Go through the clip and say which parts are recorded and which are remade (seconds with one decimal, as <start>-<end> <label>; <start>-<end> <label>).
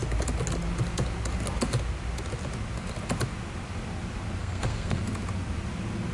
0.0-4.4 recorded; 4.4-5.0 remade; 5.0-6.1 recorded